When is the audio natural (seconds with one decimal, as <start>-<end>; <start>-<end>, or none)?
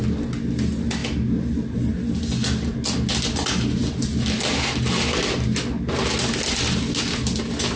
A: 0.0-7.8